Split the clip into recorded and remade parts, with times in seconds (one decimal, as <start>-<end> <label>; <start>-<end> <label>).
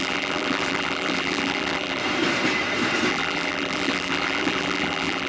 0.0-2.0 remade; 2.0-3.1 recorded; 3.1-5.3 remade